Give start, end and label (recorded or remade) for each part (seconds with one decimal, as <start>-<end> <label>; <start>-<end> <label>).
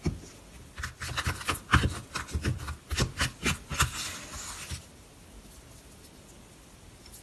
0.0-7.2 recorded